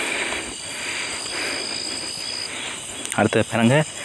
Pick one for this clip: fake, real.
real